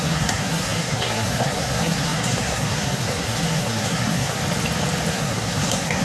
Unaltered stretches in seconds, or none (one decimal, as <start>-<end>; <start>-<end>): 4.4-5.1